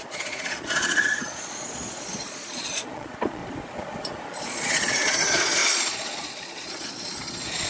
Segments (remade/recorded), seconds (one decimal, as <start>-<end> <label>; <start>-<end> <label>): 0.0-3.4 remade; 3.4-4.4 recorded; 4.4-7.7 remade